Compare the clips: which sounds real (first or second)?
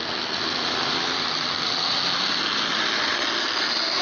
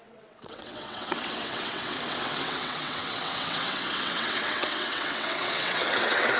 first